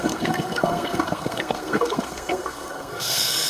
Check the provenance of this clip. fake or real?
fake